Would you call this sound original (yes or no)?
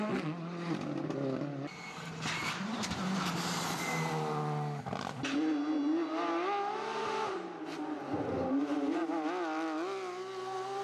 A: yes